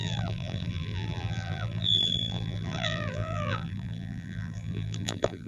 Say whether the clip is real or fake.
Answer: fake